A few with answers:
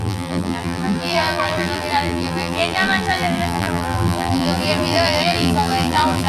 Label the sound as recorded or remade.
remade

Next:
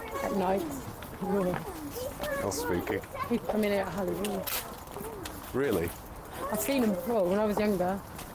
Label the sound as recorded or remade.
recorded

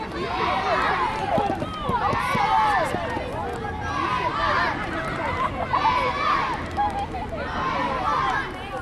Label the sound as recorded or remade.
recorded